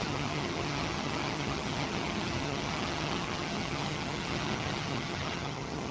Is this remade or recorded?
remade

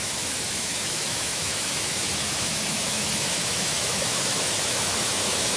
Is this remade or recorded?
remade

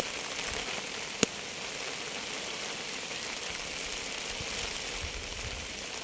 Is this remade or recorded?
recorded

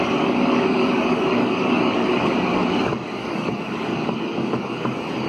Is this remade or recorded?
remade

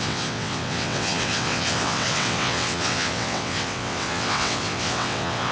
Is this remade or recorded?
remade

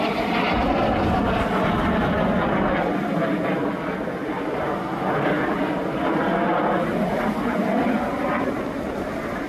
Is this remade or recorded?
recorded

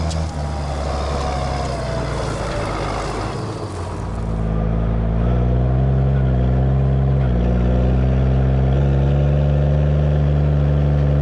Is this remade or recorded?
recorded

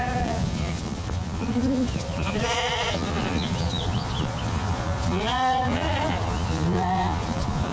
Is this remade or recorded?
remade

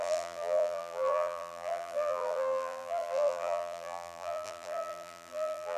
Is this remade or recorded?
remade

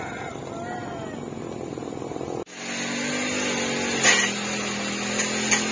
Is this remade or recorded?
recorded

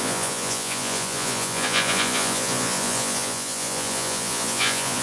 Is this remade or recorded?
remade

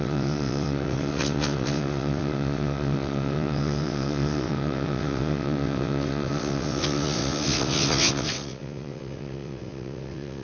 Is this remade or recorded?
remade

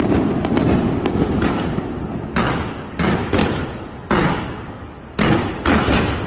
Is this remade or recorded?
recorded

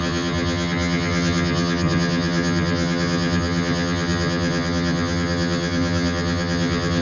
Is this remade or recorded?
remade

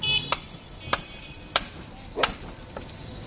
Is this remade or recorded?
remade